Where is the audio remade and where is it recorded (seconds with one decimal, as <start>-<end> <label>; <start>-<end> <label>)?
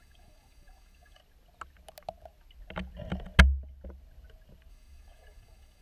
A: 0.0-1.2 remade; 1.2-4.7 recorded; 4.7-5.8 remade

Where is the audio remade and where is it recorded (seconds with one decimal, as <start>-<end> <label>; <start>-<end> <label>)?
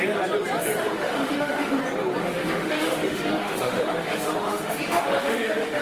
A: 0.0-0.8 recorded; 0.8-1.8 remade; 1.8-2.2 recorded; 2.2-5.8 remade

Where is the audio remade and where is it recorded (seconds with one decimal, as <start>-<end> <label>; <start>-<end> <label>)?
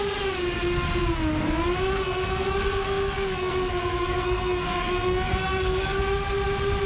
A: 0.0-1.9 recorded; 1.9-6.0 remade; 6.0-6.9 recorded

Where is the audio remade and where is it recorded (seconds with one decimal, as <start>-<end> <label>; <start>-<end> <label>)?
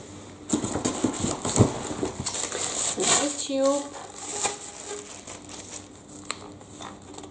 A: 0.0-7.3 recorded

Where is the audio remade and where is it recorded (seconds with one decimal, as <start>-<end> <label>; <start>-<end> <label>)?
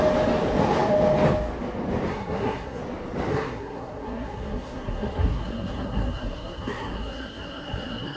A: 0.0-2.1 recorded; 2.1-2.8 remade; 2.8-3.3 recorded; 3.3-8.2 remade